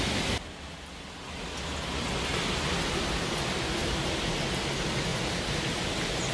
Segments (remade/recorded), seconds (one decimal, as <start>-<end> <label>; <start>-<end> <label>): 0.0-3.8 recorded; 3.8-4.4 remade; 4.4-5.1 recorded; 5.1-6.3 remade